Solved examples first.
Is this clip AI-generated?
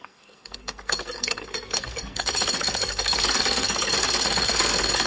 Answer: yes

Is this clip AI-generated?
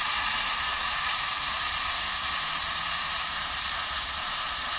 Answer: yes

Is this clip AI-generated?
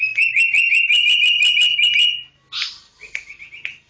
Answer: no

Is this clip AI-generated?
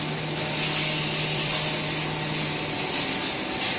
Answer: no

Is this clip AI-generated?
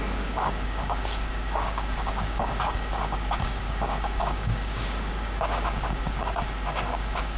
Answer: yes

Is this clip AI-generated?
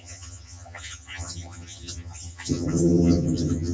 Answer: yes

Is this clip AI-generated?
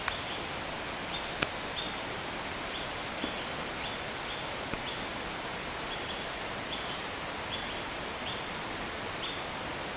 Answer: no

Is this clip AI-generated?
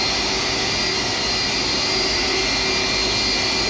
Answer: no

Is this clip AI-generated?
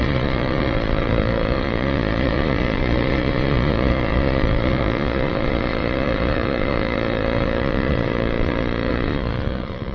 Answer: yes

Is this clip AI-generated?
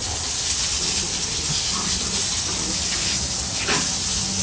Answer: no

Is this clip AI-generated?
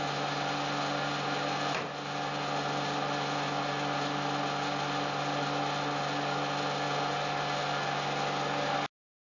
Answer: no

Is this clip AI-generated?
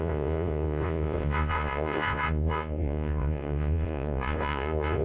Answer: yes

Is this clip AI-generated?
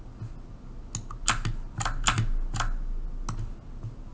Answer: no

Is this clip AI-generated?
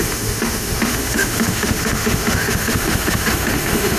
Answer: yes